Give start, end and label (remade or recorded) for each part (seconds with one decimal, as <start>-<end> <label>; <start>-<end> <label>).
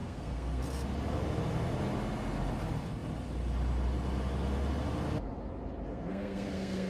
0.0-0.6 remade; 0.6-5.9 recorded; 5.9-6.9 remade